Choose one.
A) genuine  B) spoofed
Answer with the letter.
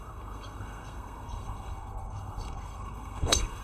B